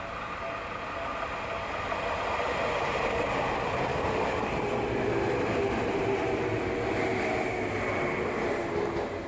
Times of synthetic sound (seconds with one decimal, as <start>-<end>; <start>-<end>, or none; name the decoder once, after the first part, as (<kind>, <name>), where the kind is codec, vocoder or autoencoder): 3.9-4.5 (codec, DAC)